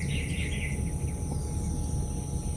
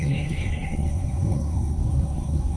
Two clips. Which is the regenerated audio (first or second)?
second